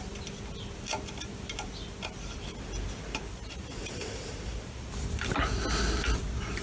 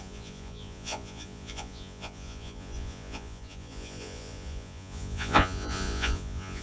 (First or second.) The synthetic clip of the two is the second